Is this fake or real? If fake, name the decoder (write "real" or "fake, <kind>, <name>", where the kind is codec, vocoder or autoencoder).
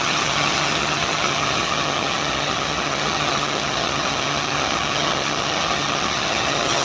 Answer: fake, vocoder, HiFi-GAN